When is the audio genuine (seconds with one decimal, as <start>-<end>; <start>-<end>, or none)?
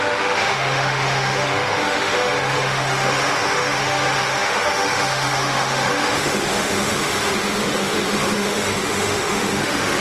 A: none